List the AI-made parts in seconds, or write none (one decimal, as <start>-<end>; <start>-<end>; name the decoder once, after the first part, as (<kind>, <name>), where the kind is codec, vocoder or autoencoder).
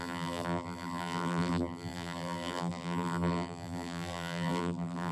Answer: 0.0-5.1 (vocoder, BigVGAN v2)